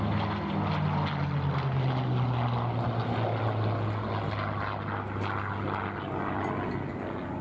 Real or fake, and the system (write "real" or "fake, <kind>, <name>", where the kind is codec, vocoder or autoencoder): real